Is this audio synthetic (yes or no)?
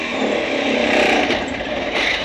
yes